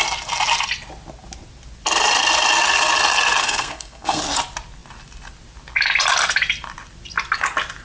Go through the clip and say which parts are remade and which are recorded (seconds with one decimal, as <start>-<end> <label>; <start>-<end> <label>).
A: 0.0-3.4 recorded; 3.4-4.2 remade; 4.2-7.8 recorded